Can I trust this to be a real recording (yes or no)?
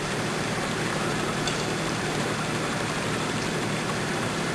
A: no